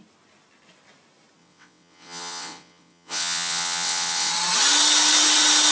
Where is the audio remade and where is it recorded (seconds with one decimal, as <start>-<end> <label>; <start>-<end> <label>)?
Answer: 0.0-1.4 recorded; 1.4-4.3 remade; 4.3-5.7 recorded